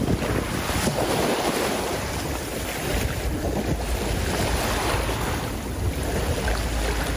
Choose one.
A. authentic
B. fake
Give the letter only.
A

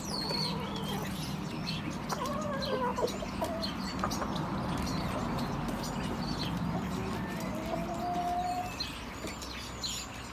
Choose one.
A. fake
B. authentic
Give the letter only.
B